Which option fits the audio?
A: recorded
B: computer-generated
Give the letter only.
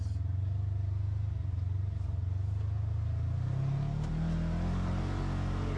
A